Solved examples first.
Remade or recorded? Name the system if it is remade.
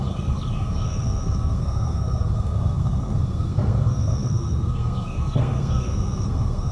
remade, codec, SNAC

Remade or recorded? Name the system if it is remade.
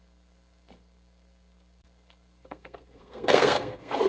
remade, codec, SNAC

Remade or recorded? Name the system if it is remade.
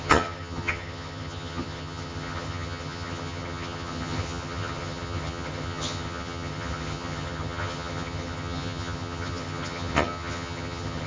remade, vocoder, HiFi-GAN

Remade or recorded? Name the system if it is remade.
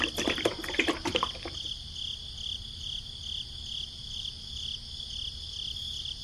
recorded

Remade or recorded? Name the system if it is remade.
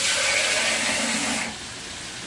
recorded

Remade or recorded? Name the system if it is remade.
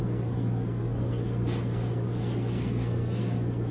remade, codec, SNAC